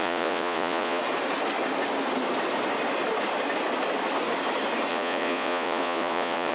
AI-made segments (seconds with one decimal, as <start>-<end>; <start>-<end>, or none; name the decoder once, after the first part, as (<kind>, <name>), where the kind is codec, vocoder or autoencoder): 0.0-1.0 (vocoder, Vocos); 4.9-6.5